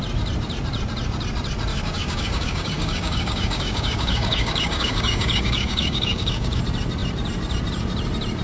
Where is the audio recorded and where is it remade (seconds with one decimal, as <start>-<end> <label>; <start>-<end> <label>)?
0.0-1.7 recorded; 1.7-6.6 remade; 6.6-8.4 recorded